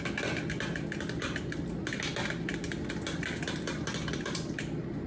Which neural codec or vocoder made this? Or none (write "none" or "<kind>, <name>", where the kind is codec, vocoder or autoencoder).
none